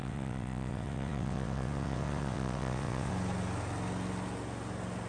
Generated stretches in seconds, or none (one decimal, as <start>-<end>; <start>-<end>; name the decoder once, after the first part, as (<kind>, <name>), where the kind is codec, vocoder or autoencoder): 0.0-3.1 (vocoder, WaveNeXt)